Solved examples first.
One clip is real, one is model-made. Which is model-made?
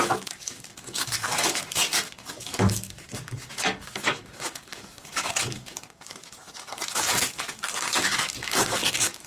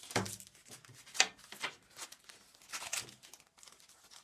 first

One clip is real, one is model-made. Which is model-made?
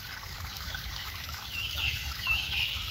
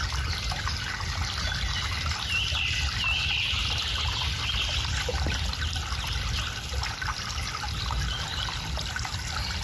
first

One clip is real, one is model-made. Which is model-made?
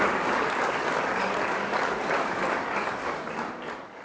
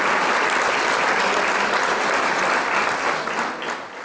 first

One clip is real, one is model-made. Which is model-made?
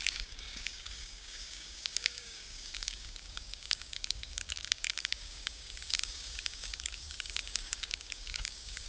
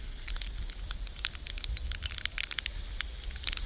first